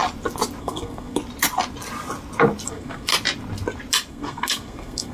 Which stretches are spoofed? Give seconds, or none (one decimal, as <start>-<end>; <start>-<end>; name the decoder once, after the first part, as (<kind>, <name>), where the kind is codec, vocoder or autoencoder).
0.6-1.2 (codec, SNAC); 2.7-3.1; 4.1-5.1